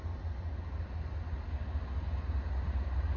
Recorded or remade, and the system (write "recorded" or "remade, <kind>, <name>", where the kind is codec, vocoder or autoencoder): recorded